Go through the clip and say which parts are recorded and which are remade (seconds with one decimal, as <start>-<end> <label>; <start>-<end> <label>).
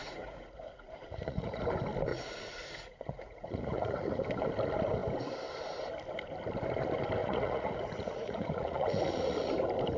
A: 0.0-1.6 remade; 1.6-2.1 recorded; 2.1-4.2 remade; 4.2-7.2 recorded; 7.2-9.5 remade; 9.5-10.0 recorded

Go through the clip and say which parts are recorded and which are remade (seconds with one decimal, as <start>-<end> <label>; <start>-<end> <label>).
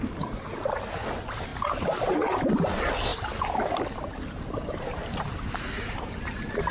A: 0.0-6.7 recorded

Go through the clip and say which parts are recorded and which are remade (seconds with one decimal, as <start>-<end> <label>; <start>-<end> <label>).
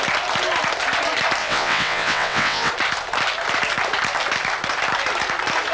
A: 0.0-1.4 recorded; 1.4-2.7 remade; 2.7-5.7 recorded